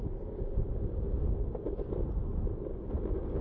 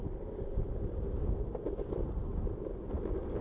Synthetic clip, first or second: second